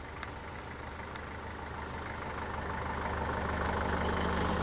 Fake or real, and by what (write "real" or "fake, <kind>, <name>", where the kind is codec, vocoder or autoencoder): real